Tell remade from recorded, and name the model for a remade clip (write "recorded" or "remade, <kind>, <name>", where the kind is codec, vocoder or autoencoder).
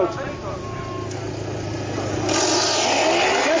recorded